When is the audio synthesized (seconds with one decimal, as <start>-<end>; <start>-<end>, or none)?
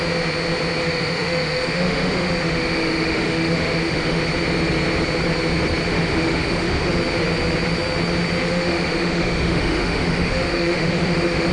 0.8-4.2; 5.9-6.9; 8.4-11.5